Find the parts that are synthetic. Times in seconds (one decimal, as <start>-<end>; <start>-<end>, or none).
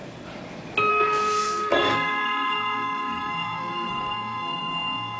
0.9-5.2